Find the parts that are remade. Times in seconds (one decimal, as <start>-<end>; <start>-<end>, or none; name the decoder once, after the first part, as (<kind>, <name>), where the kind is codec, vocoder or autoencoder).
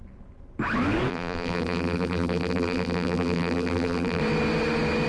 1.1-4.2 (vocoder, BigVGAN v2)